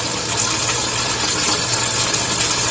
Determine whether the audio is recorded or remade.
recorded